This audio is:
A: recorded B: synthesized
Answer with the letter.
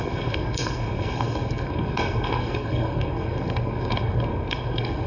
B